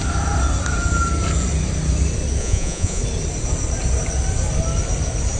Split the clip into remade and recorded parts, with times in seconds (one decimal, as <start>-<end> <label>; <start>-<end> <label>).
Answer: 0.0-2.4 recorded; 2.4-3.0 remade; 3.0-5.4 recorded